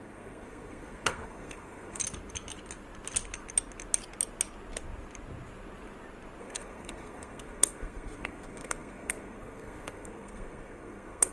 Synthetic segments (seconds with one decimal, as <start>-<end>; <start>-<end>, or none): 0.0-2.0; 6.4-11.3